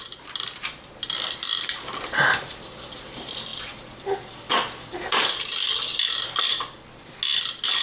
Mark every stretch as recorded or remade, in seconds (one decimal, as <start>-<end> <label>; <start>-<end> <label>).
0.0-7.8 recorded